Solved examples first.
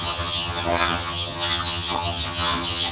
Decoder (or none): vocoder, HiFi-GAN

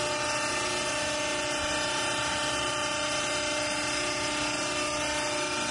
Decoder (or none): none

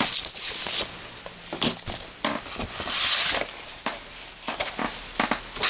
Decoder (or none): none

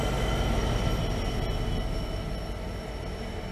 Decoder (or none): none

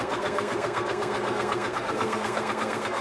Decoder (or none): codec, SNAC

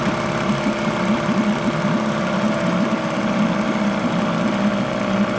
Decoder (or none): none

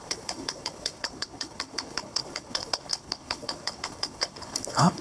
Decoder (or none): codec, HILCodec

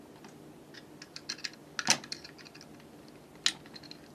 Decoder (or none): none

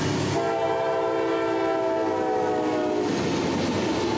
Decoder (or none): none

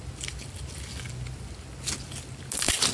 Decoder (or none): none